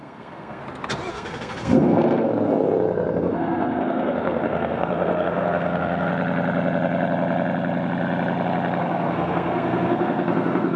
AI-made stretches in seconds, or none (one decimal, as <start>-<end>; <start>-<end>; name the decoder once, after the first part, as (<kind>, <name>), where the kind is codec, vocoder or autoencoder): 0.0-0.6 (codec, SNAC); 1.1-2.3; 3.1-6.1; 8.8-10.8